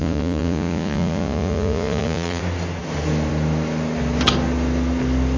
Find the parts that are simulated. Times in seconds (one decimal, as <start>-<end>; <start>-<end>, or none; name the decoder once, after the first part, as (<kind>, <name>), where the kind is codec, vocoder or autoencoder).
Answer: 0.0-2.4 (vocoder, Vocos)